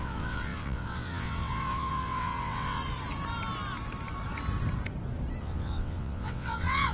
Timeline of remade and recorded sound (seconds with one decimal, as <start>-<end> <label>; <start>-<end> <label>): 0.0-2.8 remade; 2.8-5.4 recorded; 5.4-6.9 remade